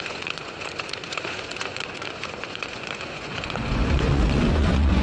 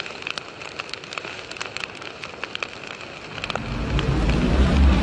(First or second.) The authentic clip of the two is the second